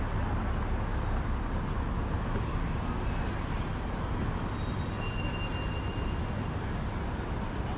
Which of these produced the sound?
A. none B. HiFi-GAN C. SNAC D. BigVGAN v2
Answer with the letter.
A